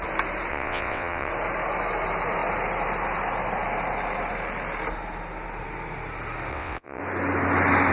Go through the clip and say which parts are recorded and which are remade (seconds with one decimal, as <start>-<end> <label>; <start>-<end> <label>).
0.0-0.5 recorded; 0.5-1.3 remade; 1.3-6.5 recorded; 6.5-7.0 remade; 7.0-7.9 recorded